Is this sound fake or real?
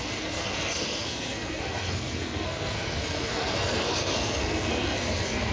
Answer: fake